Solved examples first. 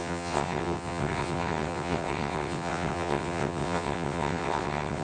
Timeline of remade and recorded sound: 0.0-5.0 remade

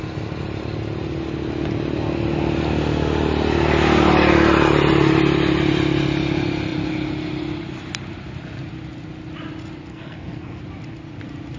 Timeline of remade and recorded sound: 0.0-9.9 recorded; 9.9-10.6 remade; 10.6-11.6 recorded

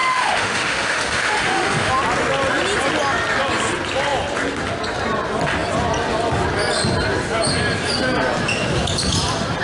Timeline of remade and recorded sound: 0.0-1.9 remade; 1.9-9.6 recorded

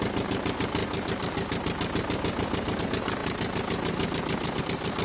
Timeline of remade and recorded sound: 0.0-5.0 recorded

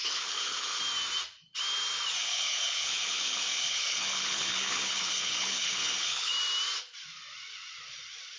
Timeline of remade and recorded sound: 0.0-0.8 remade; 0.8-2.2 recorded; 2.2-6.3 remade; 6.3-8.4 recorded

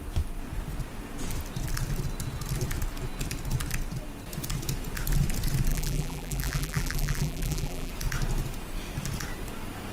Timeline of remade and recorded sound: 0.0-5.7 recorded; 5.7-7.9 remade; 7.9-9.9 recorded

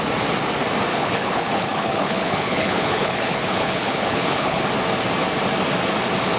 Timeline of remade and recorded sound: 0.0-0.9 recorded; 0.9-4.7 remade; 4.7-6.4 recorded